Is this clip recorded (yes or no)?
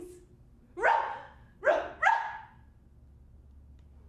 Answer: yes